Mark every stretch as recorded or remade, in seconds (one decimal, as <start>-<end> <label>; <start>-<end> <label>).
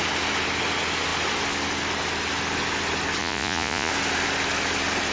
0.0-3.2 recorded; 3.2-3.9 remade; 3.9-5.1 recorded